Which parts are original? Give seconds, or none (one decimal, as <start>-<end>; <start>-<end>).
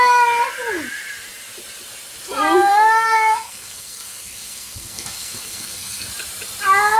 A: 0.0-2.7; 6.1-7.0